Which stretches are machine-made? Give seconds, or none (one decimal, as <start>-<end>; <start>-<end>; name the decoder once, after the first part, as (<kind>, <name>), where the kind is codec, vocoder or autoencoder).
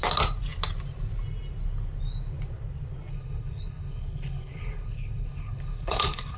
3.1-6.4 (codec, HILCodec)